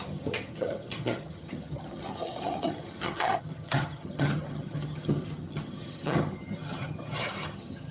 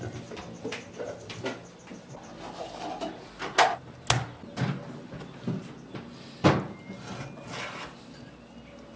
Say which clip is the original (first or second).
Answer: second